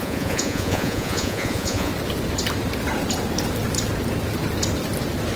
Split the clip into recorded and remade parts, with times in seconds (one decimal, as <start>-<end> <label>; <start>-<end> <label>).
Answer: 0.0-1.9 remade; 1.9-5.4 recorded